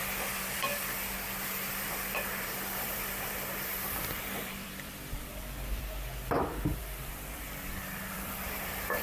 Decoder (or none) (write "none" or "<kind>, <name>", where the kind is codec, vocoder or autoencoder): vocoder, BigVGAN v2